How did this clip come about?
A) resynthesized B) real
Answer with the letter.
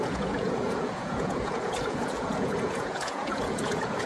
A